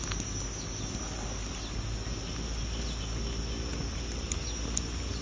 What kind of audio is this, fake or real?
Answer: real